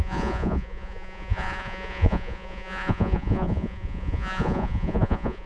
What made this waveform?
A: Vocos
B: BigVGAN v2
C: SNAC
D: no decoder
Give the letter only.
A